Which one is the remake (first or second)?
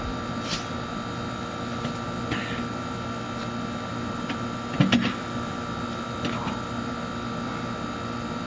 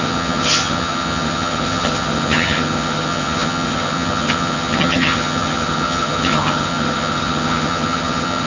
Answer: second